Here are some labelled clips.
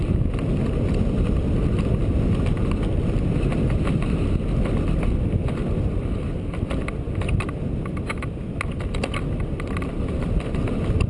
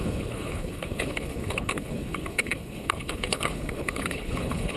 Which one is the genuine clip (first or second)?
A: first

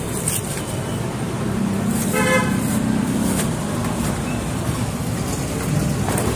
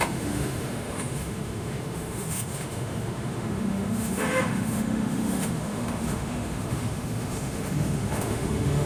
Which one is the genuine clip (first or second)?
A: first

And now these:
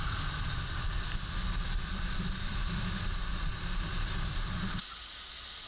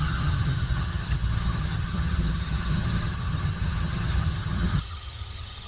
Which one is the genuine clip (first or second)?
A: first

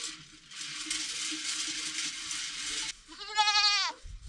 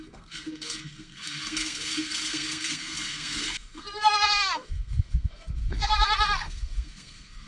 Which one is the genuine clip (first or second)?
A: first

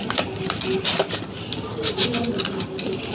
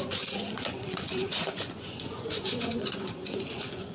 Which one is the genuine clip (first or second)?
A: first